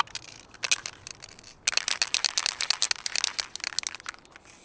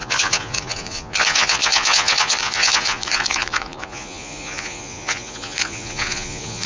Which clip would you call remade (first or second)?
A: second